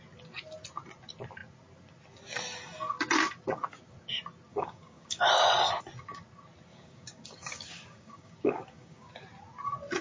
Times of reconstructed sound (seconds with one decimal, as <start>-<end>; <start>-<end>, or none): 4.5-5.2; 6.7-9.2

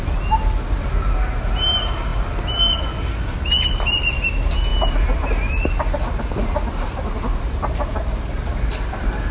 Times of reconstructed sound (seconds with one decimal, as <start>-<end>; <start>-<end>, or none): none